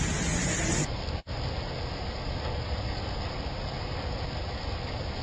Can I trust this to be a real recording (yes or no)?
yes